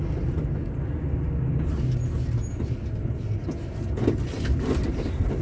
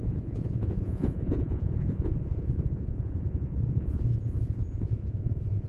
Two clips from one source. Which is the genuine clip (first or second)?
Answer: first